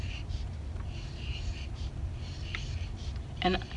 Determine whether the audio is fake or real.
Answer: real